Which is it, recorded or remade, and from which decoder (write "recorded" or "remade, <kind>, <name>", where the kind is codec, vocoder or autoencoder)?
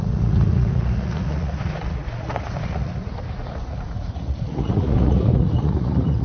remade, vocoder, Vocos